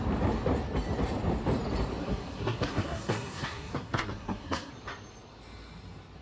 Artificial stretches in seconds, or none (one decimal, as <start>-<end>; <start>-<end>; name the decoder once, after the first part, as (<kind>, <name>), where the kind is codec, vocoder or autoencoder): 2.0-4.7 (codec, SNAC)